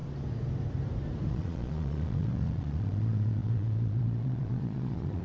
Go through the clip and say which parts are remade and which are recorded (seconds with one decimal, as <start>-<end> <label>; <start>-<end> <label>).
0.0-1.3 recorded; 1.3-5.2 remade